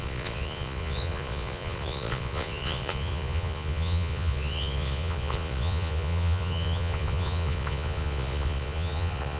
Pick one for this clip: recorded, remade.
remade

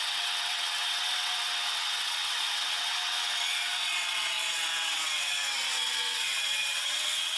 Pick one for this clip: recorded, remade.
remade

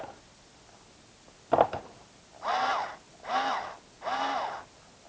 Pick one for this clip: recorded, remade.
recorded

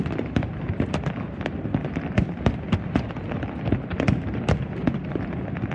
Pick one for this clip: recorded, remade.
recorded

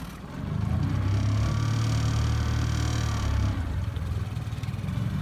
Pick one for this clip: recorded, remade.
recorded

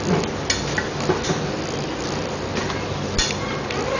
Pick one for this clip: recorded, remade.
recorded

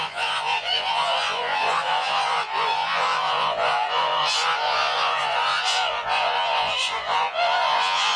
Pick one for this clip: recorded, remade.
remade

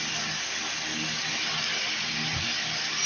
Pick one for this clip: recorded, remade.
recorded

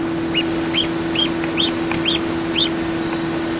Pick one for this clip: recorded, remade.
recorded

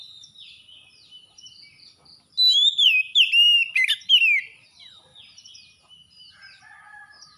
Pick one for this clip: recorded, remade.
recorded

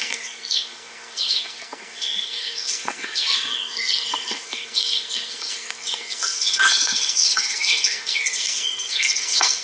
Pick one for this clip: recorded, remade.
remade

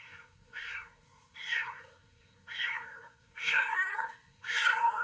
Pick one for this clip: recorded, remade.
remade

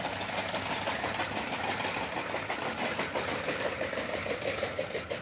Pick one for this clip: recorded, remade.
recorded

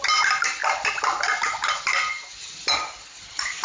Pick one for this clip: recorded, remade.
recorded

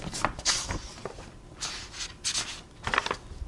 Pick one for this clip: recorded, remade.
recorded